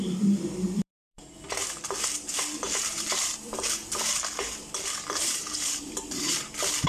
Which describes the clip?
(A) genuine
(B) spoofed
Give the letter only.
B